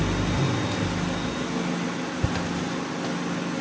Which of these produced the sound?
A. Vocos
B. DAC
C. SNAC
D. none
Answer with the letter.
D